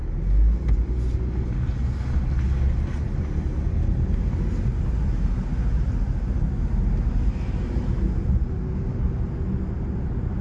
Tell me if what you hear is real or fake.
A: real